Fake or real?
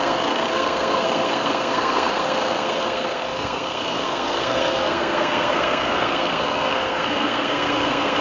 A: fake